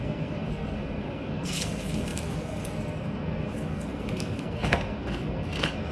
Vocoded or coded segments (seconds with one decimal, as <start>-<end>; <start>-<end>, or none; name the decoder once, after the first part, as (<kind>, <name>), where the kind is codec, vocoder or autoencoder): 0.0-5.9 (codec, SNAC)